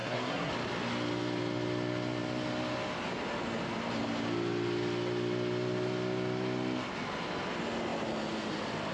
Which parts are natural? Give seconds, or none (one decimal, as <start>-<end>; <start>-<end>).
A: 0.5-8.9